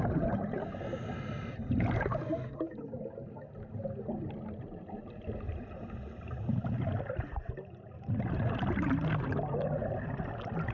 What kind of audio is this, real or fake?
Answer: real